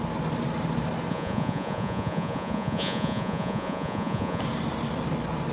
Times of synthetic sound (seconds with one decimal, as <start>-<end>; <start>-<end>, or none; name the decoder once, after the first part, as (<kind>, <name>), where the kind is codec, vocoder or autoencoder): 1.1-4.4 (vocoder, Vocos)